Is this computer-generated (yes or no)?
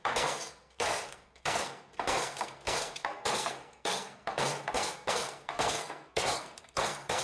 yes